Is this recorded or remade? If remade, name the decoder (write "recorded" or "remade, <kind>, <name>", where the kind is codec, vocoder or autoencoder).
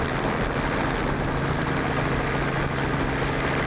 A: recorded